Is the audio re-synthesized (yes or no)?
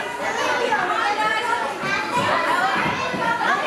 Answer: no